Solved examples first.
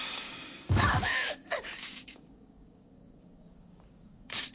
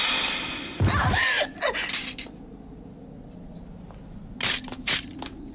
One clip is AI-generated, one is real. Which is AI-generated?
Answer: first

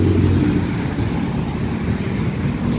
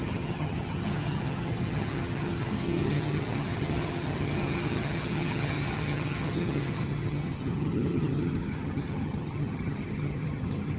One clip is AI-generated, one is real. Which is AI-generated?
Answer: second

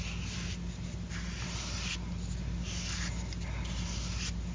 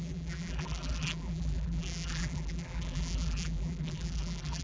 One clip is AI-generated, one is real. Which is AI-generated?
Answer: second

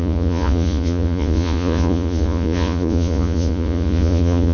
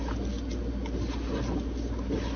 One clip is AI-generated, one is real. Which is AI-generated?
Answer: first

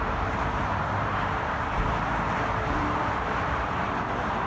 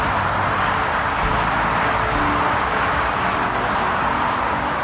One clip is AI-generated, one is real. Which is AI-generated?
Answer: first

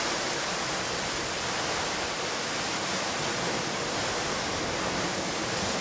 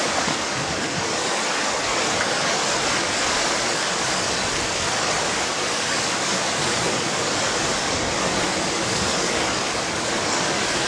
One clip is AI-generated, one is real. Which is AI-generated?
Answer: second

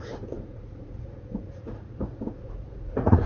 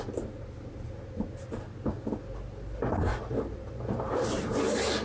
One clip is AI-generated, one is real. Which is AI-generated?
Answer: first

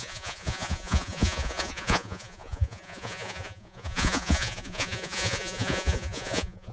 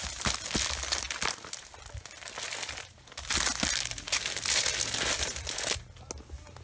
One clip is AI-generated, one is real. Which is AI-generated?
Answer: first